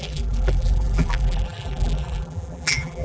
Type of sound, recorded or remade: remade